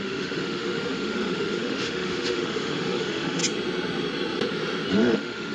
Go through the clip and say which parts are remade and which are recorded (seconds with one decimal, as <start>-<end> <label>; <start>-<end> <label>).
0.0-3.4 remade; 3.4-4.9 recorded; 4.9-5.5 remade